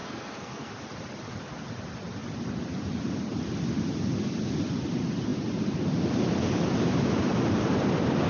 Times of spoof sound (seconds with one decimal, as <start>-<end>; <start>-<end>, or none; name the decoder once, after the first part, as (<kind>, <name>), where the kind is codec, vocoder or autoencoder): 0.0-0.7 (codec, SNAC)